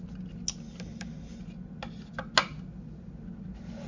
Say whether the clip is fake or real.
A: real